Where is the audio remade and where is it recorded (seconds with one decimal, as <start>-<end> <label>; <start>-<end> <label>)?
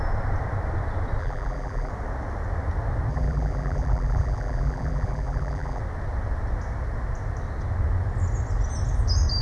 0.0-1.2 recorded; 1.2-1.9 remade; 1.9-3.1 recorded; 3.1-5.8 remade; 5.8-9.4 recorded